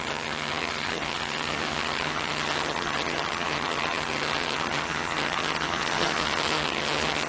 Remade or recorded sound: remade